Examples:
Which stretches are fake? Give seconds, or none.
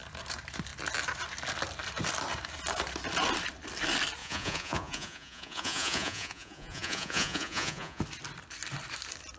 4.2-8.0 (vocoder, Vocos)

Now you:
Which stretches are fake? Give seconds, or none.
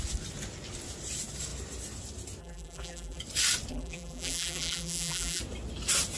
2.4-3.2 (vocoder, BigVGAN v2); 3.7-5.4